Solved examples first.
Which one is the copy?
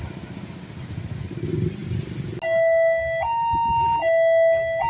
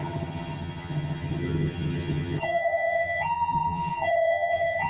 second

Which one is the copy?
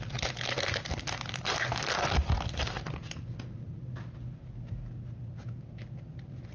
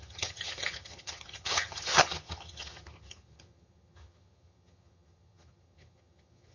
second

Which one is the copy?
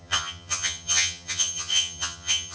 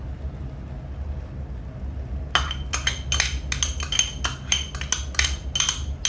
first